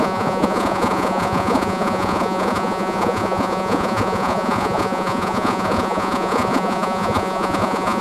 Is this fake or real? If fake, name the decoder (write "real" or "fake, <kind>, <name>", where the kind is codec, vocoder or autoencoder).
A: fake, vocoder, Vocos